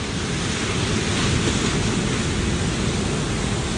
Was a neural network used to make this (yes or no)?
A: no